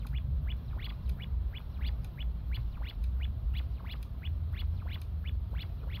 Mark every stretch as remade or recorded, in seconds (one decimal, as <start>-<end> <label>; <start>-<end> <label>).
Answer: 0.0-6.0 remade